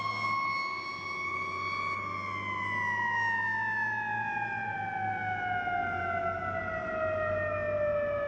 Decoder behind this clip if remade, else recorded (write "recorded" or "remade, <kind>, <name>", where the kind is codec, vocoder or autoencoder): recorded